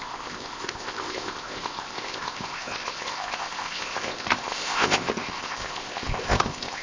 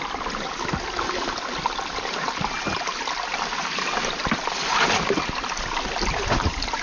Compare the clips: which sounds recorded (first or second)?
second